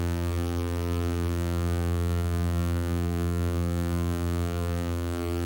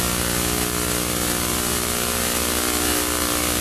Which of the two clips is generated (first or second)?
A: first